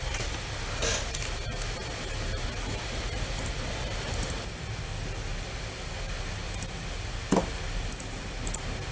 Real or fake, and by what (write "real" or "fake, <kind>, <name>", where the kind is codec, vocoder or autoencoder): real